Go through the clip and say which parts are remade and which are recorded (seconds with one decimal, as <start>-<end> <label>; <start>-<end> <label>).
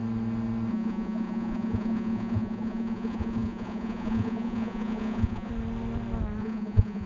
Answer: 0.0-0.7 recorded; 0.7-5.5 remade; 5.5-6.4 recorded; 6.4-7.1 remade